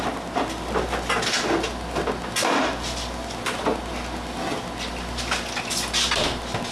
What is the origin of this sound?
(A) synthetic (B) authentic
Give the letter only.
B